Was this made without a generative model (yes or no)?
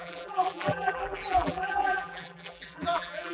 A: no